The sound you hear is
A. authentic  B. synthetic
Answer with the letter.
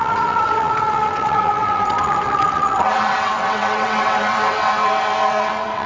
B